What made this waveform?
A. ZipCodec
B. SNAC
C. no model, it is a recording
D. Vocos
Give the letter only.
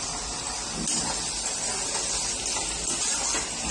C